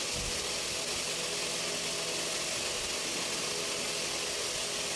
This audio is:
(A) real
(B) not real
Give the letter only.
A